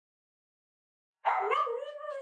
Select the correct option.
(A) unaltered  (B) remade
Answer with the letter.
B